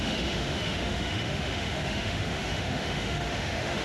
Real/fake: fake